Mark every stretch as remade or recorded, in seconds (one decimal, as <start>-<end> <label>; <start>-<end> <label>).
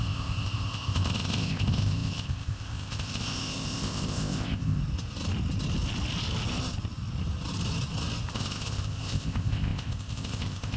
0.0-4.8 remade; 4.8-8.3 recorded; 8.3-10.8 remade